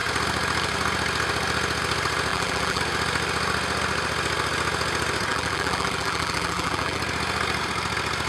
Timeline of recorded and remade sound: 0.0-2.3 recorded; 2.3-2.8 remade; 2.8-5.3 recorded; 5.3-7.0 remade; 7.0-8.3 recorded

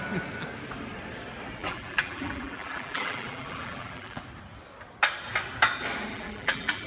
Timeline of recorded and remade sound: 0.0-1.6 recorded; 1.6-4.2 remade; 4.2-6.1 recorded; 6.1-6.9 remade

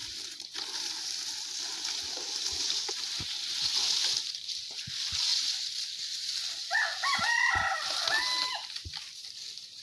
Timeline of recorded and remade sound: 0.0-0.6 remade; 0.6-3.3 recorded; 3.3-4.8 remade; 4.8-5.3 recorded; 5.3-6.4 remade; 6.4-9.8 recorded